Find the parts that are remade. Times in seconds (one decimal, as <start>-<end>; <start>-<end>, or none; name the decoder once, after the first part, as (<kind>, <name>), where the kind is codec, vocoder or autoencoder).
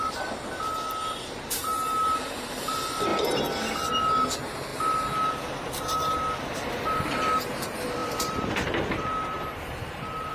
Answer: 8.0-10.3 (vocoder, BigVGAN v2)